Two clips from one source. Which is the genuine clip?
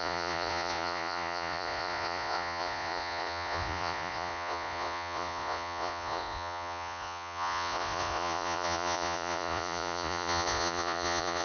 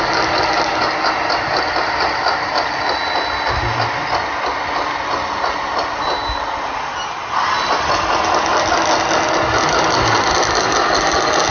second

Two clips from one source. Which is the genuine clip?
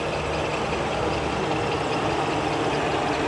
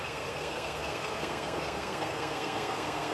first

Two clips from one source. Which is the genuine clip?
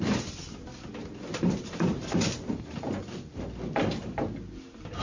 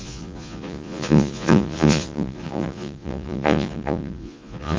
first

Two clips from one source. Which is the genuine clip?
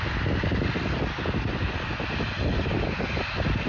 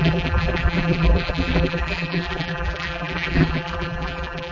first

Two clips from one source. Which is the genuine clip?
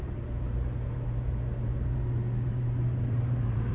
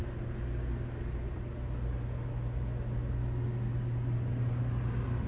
second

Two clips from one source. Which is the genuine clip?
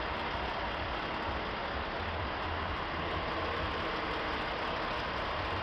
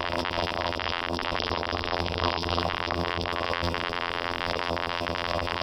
first